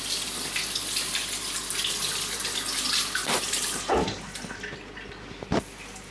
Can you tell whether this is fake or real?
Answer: real